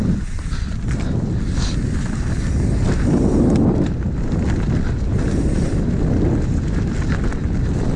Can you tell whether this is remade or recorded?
recorded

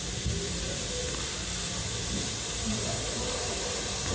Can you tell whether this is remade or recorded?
remade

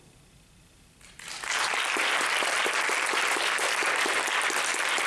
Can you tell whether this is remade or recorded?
remade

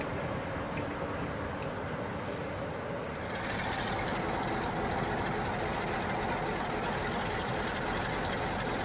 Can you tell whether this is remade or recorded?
recorded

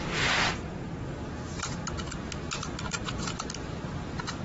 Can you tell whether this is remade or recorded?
recorded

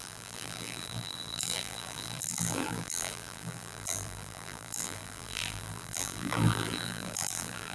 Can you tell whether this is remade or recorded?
remade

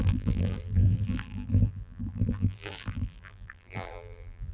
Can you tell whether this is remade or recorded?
remade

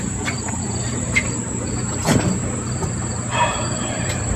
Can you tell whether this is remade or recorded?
remade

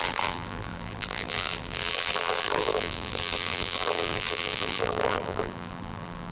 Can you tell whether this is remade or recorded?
remade